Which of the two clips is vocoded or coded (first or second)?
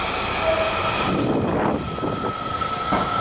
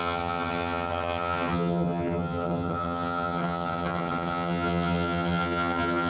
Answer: second